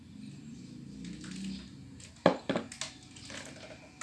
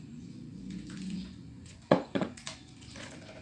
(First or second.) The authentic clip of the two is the first